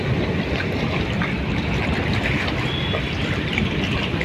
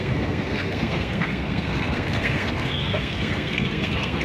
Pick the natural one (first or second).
first